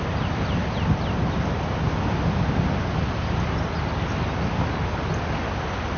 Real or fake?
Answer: real